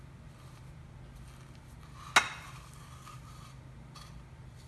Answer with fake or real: real